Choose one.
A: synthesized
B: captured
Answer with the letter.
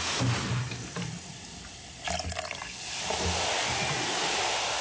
B